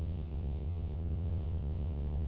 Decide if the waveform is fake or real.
fake